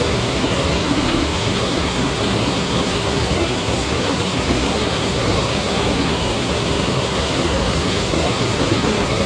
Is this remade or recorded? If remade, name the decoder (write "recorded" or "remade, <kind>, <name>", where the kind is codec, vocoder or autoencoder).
remade, codec, SNAC